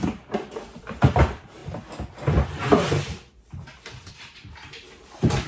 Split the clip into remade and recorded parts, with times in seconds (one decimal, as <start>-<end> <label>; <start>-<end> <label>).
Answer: 0.0-1.6 remade; 1.6-4.1 recorded; 4.1-5.5 remade